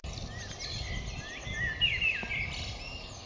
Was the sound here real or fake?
real